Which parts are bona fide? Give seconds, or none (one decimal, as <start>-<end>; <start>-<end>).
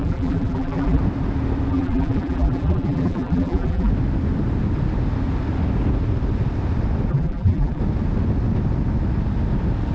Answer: 1.0-1.7; 3.9-7.1; 7.8-9.9